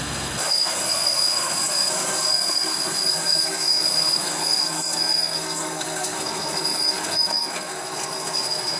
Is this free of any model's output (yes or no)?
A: no